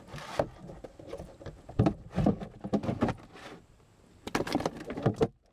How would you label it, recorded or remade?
recorded